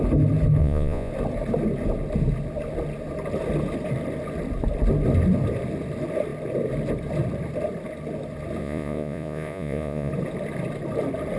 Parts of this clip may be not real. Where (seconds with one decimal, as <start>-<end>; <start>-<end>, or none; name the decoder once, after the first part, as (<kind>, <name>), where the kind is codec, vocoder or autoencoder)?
0.6-1.1 (vocoder, Vocos); 8.6-10.1